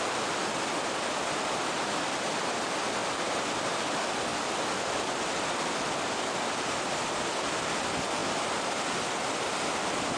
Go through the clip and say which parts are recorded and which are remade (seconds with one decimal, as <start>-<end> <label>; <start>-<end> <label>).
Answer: 0.0-0.4 recorded; 0.4-1.7 remade; 1.7-4.3 recorded; 4.3-6.6 remade; 6.6-10.2 recorded

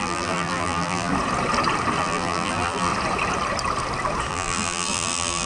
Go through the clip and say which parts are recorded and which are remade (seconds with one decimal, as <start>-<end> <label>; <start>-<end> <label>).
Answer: 0.0-1.1 remade; 1.1-2.0 recorded; 2.0-2.9 remade; 2.9-4.3 recorded; 4.3-5.5 remade

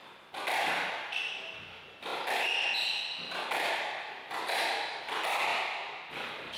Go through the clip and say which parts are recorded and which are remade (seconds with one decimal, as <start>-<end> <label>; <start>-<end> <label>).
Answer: 0.0-1.1 remade; 1.1-2.1 recorded; 2.1-5.0 remade; 5.0-6.6 recorded